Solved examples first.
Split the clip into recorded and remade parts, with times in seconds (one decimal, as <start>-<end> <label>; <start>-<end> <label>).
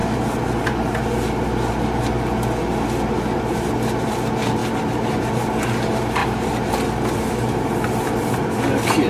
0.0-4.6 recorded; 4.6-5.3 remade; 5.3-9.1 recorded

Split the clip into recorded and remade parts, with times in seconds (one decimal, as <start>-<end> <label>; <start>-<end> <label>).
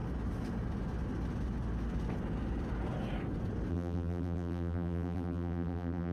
0.0-3.7 recorded; 3.7-6.1 remade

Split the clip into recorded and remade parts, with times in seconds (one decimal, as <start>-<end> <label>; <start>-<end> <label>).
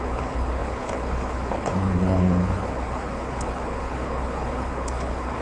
0.0-5.4 remade